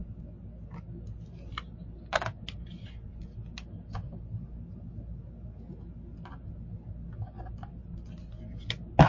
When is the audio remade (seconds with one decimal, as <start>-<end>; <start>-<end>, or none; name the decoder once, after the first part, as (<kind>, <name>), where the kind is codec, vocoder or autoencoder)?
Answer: none